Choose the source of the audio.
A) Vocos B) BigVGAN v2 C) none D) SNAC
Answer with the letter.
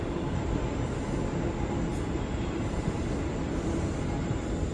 C